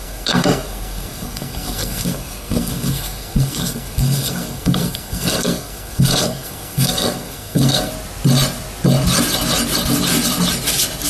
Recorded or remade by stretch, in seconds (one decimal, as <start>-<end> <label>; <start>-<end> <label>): 0.0-7.9 remade; 7.9-11.1 recorded